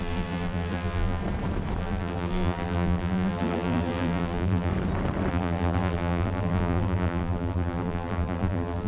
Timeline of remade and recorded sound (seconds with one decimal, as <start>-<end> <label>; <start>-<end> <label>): 0.0-1.2 remade; 1.2-1.8 recorded; 1.8-4.7 remade; 4.7-5.3 recorded; 5.3-8.9 remade